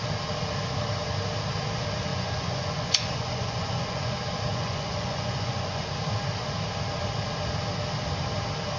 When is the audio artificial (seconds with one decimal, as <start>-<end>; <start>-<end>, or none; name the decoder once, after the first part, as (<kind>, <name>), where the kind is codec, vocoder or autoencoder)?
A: 2.1-4.1 (vocoder, Vocos); 4.5-5.8